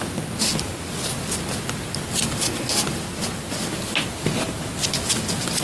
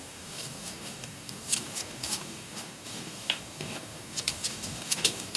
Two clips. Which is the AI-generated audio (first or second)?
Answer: second